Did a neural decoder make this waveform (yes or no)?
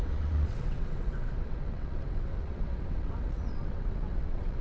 yes